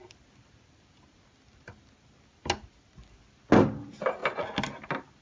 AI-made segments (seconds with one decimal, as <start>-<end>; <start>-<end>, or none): none